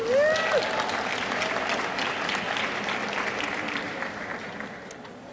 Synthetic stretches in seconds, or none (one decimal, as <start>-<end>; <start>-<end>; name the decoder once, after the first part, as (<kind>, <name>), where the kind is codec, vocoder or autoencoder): none